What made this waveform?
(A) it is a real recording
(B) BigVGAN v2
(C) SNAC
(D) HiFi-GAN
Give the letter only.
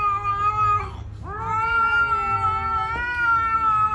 A